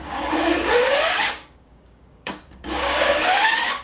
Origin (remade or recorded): remade